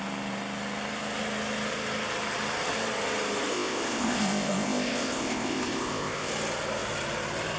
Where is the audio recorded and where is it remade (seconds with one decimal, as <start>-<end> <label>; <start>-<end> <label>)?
0.0-3.5 recorded; 3.5-6.3 remade; 6.3-7.6 recorded